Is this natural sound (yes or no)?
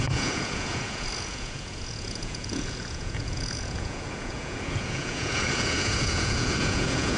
no